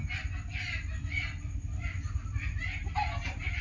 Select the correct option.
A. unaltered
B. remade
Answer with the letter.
A